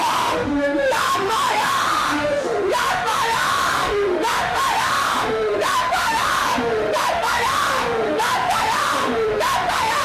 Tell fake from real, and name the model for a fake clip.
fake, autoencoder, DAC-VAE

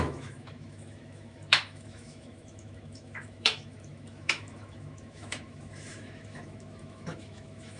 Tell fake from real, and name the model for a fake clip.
fake, autoencoder, DAC-VAE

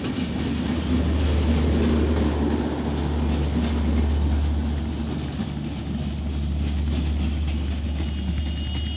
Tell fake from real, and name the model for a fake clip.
real